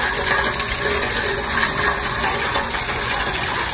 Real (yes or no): no